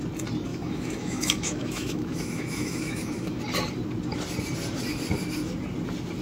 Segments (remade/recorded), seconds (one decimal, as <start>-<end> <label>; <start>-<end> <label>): 0.0-0.5 recorded; 0.5-3.4 remade; 3.4-6.2 recorded